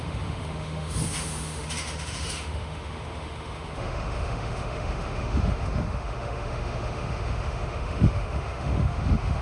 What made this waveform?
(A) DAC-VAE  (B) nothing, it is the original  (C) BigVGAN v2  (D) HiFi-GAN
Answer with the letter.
A